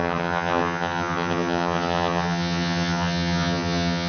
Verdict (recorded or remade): remade